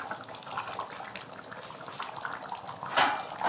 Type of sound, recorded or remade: recorded